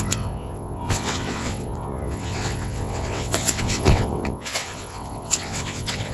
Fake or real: fake